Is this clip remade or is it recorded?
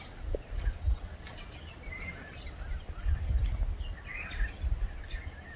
recorded